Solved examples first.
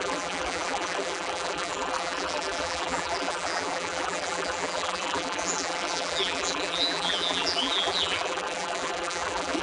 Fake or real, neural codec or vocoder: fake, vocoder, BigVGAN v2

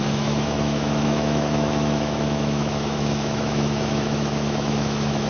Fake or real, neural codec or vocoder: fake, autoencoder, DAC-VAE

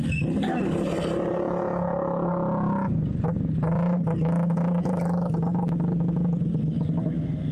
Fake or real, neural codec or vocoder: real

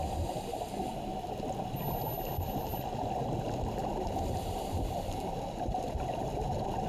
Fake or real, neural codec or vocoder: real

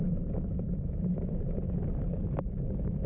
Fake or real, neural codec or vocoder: real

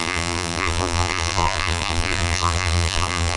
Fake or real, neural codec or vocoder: fake, vocoder, BigVGAN v2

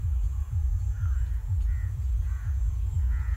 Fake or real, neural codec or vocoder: fake, vocoder, Vocos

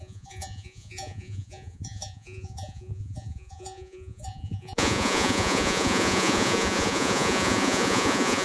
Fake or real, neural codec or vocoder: fake, vocoder, Vocos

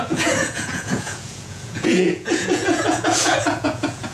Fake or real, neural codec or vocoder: fake, vocoder, Vocos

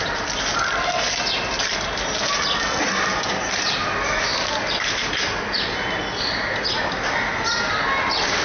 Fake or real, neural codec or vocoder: real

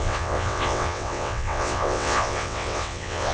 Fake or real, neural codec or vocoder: fake, vocoder, WaveNeXt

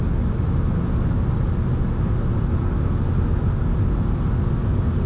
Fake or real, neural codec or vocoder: real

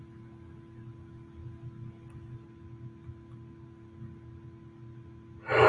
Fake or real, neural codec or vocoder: real